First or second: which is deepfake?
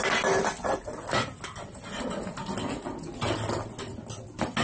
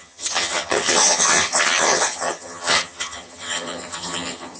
second